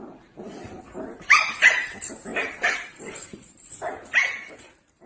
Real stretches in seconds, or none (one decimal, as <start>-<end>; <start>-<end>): 0.8-2.3; 3.4-5.1